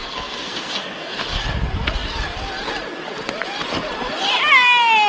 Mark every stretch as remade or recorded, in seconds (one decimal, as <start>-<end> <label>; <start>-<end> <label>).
0.0-1.4 remade; 1.4-5.1 recorded

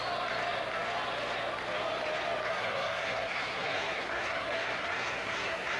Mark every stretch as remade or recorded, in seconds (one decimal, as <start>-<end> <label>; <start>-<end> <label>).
0.0-2.5 recorded; 2.5-5.8 remade

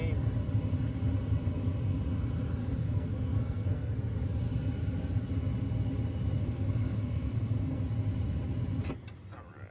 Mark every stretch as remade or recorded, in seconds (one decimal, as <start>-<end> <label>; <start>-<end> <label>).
0.0-2.6 recorded; 2.6-4.0 remade; 4.0-6.4 recorded; 6.4-7.8 remade; 7.8-9.7 recorded

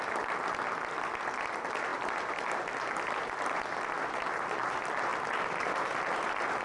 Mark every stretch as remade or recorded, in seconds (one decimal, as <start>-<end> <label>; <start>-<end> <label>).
0.0-6.6 recorded

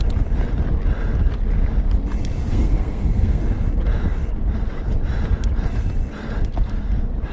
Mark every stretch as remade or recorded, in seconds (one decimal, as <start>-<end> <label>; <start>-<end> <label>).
0.0-2.5 recorded; 2.5-3.4 remade; 3.4-7.3 recorded

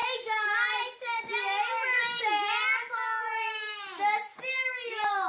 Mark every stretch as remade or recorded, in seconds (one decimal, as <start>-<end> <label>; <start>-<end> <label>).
0.0-5.3 recorded